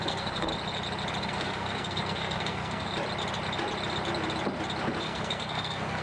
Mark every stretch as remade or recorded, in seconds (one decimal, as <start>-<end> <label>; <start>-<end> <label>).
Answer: 0.0-0.5 remade; 0.5-1.2 recorded; 1.2-2.9 remade; 2.9-5.0 recorded; 5.0-6.0 remade